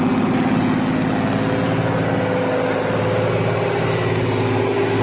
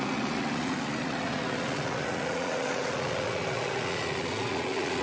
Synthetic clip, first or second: second